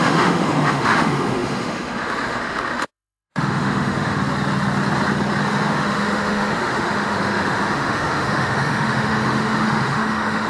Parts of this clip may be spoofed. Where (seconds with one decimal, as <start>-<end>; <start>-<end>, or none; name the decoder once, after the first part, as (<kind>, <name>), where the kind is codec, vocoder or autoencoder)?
0.0-4.2 (autoencoder, DAC-VAE); 5.5-10.5